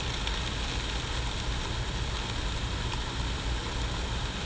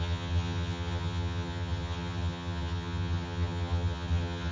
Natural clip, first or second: first